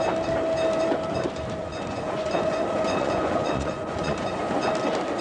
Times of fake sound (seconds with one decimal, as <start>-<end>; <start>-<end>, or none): 1.6-4.7